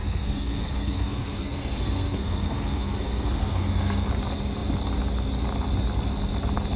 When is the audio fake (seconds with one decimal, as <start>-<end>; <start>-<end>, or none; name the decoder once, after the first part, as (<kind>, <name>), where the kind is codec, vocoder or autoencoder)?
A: 0.0-4.1 (codec, SNAC)